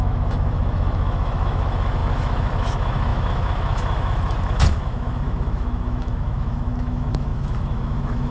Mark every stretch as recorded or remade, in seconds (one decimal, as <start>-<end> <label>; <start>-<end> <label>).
0.0-8.3 remade